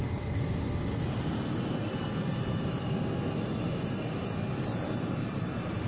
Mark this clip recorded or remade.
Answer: recorded